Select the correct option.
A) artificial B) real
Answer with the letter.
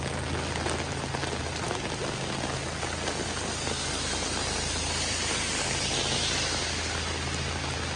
B